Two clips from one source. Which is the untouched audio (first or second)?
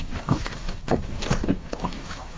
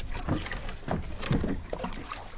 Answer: second